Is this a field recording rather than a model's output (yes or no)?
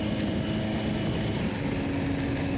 yes